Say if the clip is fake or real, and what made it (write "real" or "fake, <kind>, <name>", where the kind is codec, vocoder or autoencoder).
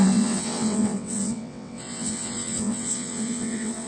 fake, vocoder, WaveNeXt